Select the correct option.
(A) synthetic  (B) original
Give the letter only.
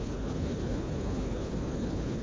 A